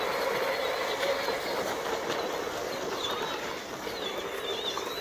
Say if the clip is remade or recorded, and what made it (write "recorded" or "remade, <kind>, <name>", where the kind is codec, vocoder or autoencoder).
recorded